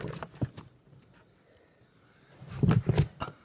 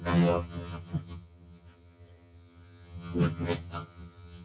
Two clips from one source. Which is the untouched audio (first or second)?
first